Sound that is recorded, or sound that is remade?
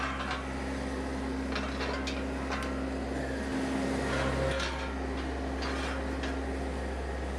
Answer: recorded